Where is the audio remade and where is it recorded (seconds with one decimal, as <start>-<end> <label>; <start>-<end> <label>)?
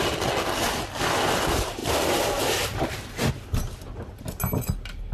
0.0-1.8 recorded; 1.8-3.3 remade; 3.3-5.1 recorded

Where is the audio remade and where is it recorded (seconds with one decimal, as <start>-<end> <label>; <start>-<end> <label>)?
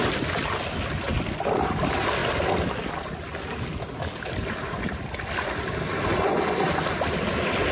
0.0-7.7 recorded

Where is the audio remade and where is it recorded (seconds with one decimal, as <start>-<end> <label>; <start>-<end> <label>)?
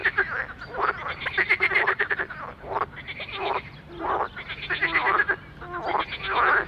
0.0-4.0 remade; 4.0-6.7 recorded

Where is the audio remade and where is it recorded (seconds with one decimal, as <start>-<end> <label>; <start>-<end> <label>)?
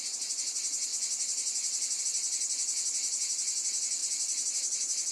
0.0-5.1 recorded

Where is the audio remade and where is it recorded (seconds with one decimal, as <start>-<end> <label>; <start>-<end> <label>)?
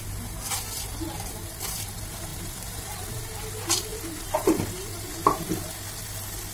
0.0-2.3 recorded; 2.3-3.0 remade; 3.0-3.9 recorded; 3.9-5.4 remade; 5.4-6.5 recorded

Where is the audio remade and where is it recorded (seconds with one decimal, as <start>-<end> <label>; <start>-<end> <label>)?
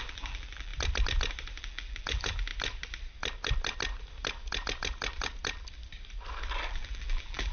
0.0-0.7 remade; 0.7-1.6 recorded; 1.6-2.5 remade; 2.5-6.7 recorded; 6.7-7.5 remade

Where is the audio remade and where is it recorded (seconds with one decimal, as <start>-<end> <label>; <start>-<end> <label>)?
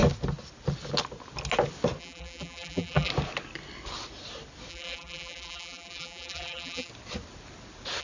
0.0-2.0 recorded; 2.0-3.1 remade; 3.1-4.7 recorded; 4.7-6.9 remade; 6.9-8.0 recorded